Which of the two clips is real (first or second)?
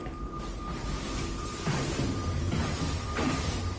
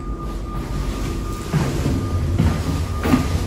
second